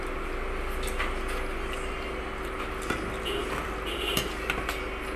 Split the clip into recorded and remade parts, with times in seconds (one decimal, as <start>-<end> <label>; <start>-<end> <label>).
0.0-3.4 recorded; 3.4-4.8 remade; 4.8-5.2 recorded